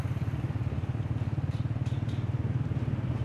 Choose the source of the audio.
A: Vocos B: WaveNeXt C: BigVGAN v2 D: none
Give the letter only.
D